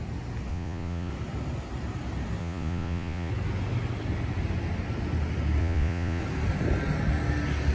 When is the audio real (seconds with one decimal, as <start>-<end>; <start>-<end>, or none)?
0.0-0.5; 1.1-2.4; 3.3-5.6; 6.2-7.7

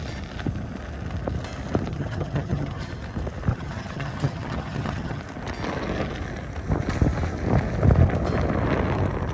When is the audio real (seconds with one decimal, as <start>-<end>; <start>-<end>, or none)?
0.0-1.9; 2.9-3.5; 5.2-9.3